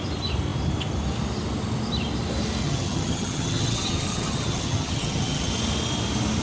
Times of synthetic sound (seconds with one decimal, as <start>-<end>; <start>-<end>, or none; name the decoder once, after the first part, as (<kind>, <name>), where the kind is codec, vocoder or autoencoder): 2.6-5.5 (vocoder, HiFi-GAN)

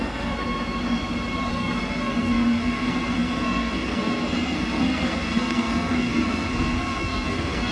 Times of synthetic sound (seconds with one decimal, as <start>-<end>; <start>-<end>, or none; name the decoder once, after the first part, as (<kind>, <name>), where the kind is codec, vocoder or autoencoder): 0.0-0.4 (codec, SNAC); 1.5-7.7

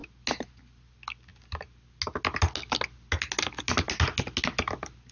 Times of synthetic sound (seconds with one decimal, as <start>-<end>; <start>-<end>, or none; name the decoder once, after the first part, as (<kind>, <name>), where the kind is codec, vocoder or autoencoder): none

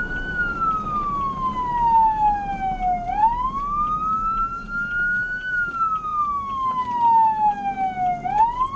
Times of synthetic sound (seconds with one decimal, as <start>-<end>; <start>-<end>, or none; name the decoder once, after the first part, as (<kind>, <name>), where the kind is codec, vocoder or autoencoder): none

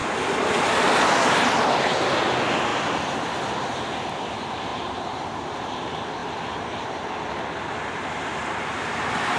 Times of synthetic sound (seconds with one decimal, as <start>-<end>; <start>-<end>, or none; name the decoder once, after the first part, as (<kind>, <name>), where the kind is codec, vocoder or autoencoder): 4.7-5.8 (vocoder, BigVGAN v2); 6.2-7.0